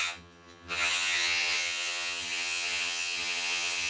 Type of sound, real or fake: fake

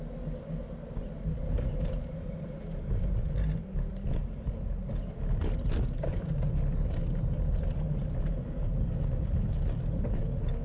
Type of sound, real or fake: real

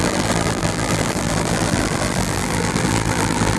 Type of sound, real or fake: fake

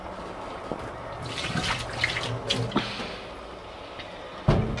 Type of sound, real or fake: real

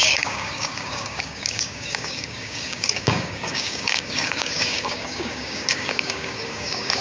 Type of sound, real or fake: fake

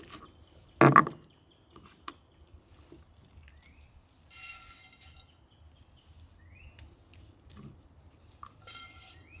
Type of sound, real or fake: real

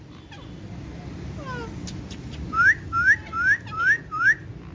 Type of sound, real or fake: real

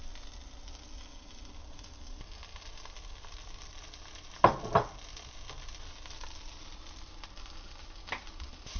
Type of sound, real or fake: real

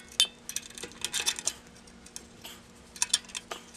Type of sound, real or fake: real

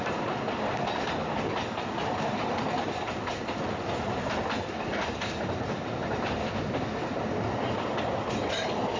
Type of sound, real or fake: real